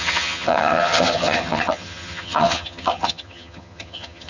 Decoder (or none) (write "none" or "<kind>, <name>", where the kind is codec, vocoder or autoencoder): vocoder, HiFi-GAN